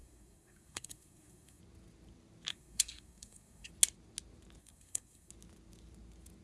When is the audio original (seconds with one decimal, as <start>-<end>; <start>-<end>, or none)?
1.6-2.5; 3.7-4.6; 5.3-6.4

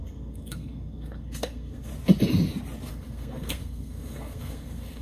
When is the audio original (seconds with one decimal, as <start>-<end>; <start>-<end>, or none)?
1.9-2.9

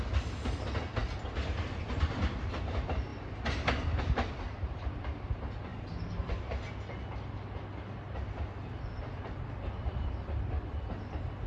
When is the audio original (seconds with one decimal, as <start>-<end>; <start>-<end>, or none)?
0.0-11.5

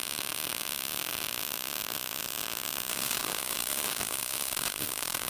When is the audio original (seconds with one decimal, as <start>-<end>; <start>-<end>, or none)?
0.0-2.9

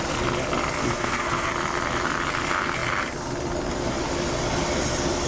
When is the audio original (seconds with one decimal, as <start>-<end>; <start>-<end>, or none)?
0.0-0.8; 1.5-5.3

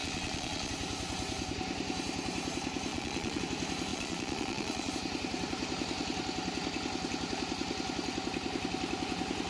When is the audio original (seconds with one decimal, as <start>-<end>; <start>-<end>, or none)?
0.7-2.9; 3.4-3.9; 4.9-9.5